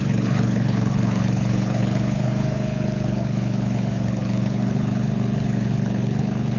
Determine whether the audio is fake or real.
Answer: fake